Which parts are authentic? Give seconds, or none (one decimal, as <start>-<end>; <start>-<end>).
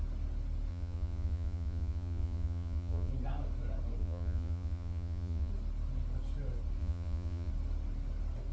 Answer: 0.0-0.7; 3.1-4.0; 5.5-6.8; 7.5-8.5